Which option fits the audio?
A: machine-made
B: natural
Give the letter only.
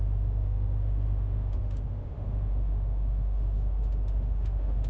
A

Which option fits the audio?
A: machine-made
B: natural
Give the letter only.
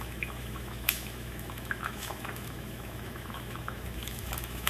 A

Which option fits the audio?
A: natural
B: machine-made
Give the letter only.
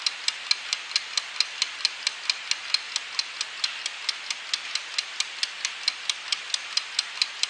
A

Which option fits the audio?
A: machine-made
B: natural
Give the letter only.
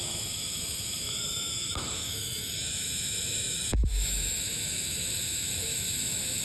A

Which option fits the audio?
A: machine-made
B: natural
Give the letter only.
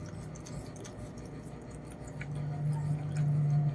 B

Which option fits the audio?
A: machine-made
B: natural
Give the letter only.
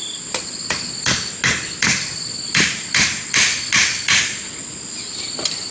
B